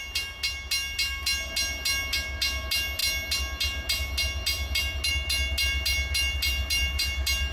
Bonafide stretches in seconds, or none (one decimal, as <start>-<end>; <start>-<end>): 0.0-7.5